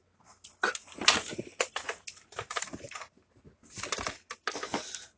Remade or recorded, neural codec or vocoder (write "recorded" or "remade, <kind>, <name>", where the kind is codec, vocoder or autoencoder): recorded